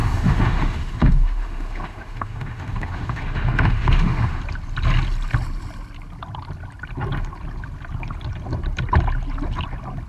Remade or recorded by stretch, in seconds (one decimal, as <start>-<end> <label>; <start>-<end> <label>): 0.0-4.4 remade; 4.4-10.1 recorded